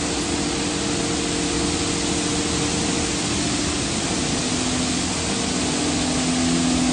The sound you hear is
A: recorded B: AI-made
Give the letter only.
A